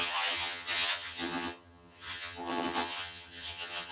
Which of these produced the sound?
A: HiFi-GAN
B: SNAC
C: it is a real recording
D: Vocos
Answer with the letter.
A